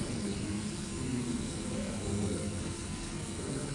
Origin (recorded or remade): remade